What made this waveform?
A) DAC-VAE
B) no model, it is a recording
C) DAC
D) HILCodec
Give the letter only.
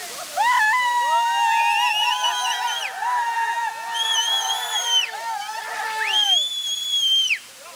B